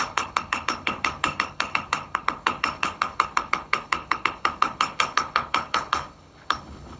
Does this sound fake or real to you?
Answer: fake